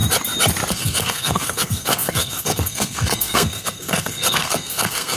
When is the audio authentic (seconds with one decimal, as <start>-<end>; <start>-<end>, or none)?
0.0-0.7